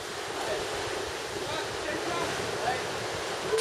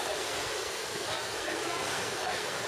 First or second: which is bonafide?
first